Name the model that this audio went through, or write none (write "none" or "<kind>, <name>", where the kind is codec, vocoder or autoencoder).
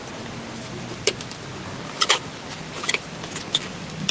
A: none